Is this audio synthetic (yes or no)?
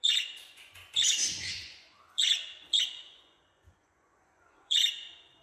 yes